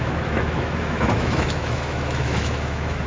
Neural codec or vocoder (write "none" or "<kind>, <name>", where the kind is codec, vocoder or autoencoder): autoencoder, DAC-VAE